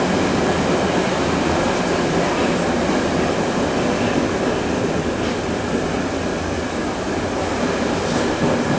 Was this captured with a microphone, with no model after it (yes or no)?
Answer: yes